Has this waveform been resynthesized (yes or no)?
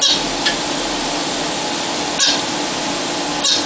no